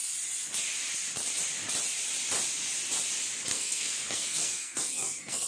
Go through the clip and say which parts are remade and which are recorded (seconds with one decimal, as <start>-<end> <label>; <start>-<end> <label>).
0.0-3.5 recorded; 3.5-5.5 remade